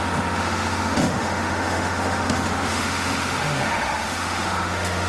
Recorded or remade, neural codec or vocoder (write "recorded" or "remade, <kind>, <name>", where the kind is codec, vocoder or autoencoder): remade, autoencoder, DAC-VAE